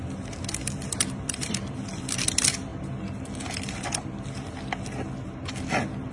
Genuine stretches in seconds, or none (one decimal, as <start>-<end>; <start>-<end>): 2.7-6.1